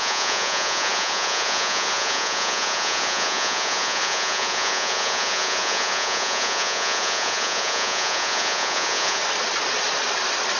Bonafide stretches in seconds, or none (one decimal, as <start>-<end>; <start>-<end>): 9.2-10.6